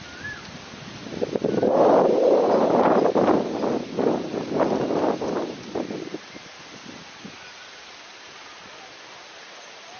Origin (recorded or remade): recorded